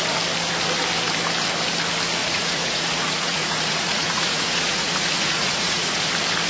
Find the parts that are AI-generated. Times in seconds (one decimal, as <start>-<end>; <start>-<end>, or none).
2.2-6.1